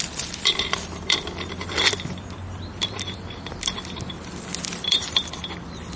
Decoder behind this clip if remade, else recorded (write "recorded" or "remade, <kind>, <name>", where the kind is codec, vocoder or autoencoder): remade, vocoder, BigVGAN v2